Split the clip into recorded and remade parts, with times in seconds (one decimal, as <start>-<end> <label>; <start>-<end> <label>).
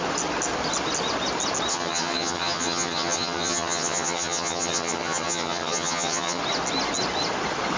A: 0.0-1.7 recorded; 1.7-6.4 remade; 6.4-7.8 recorded